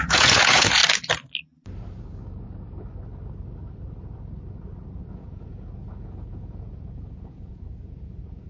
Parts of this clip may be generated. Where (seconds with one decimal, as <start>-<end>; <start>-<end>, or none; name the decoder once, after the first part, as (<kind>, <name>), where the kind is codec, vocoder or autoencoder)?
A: 0.0-0.8 (vocoder, Vocos); 5.1-8.5